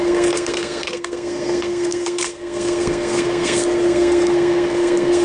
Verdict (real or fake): fake